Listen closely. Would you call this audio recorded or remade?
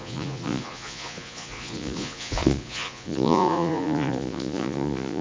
remade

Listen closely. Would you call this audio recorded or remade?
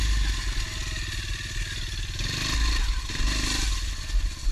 recorded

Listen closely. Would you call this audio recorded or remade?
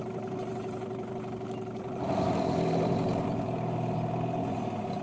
recorded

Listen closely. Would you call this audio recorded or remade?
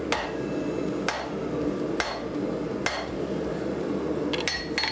recorded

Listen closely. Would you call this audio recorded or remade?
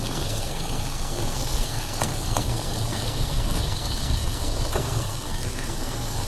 remade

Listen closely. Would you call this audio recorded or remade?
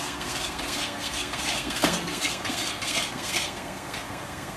remade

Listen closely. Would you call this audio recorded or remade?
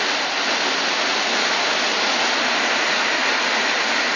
recorded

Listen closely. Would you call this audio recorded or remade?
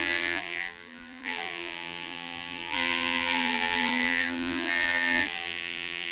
remade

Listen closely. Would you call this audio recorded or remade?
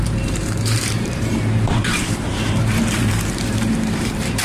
remade